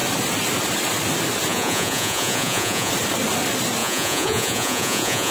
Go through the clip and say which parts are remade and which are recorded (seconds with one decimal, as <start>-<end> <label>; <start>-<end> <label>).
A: 0.0-1.5 recorded; 1.5-2.9 remade; 2.9-3.8 recorded; 3.8-5.3 remade